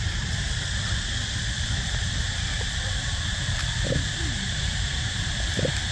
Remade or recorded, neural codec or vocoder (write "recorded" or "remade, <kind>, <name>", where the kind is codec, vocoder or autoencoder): remade, vocoder, BigVGAN v2